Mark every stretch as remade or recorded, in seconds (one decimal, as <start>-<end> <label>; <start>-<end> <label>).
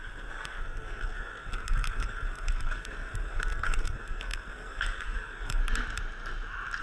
0.0-5.6 remade; 5.6-6.8 recorded